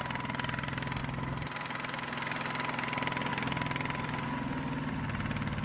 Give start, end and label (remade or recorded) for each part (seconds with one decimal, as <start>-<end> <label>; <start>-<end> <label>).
0.0-5.6 recorded